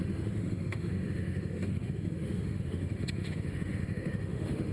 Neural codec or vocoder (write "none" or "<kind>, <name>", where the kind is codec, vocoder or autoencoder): autoencoder, DAC-VAE